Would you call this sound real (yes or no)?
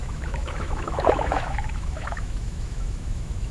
no